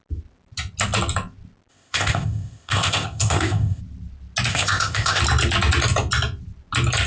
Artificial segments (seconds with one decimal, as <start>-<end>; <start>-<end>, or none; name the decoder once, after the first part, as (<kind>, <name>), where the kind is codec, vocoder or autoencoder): 1.7-3.8 (codec, ZipCodec); 4.5-5.2